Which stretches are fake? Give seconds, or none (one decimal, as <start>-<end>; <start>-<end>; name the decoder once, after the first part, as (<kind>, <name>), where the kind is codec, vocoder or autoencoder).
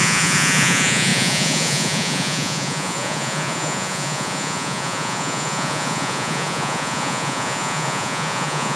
0.0-8.8 (vocoder, Vocos)